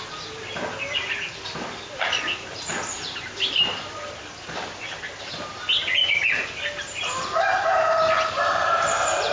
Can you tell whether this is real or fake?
real